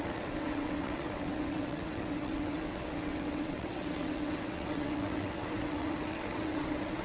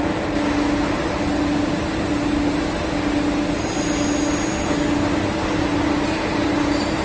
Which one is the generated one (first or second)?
first